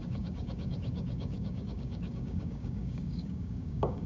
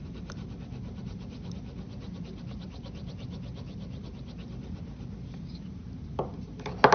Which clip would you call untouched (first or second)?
second